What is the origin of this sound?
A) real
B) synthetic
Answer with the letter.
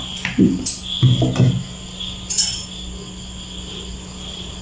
A